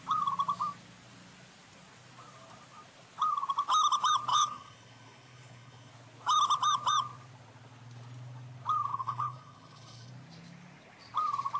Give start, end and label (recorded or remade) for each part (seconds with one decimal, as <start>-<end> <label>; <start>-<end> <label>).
0.0-4.3 recorded; 4.3-5.9 remade; 5.9-8.9 recorded; 8.9-10.1 remade; 10.1-11.6 recorded